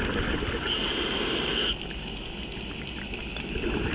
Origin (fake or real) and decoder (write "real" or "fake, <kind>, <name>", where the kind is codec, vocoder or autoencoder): real